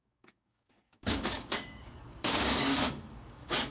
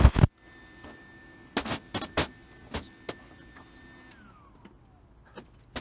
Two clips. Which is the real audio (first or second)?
second